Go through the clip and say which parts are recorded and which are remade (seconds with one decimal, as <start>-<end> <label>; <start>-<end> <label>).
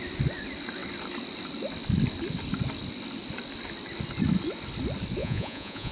0.0-5.2 recorded; 5.2-5.9 remade